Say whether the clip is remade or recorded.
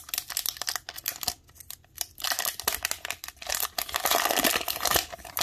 recorded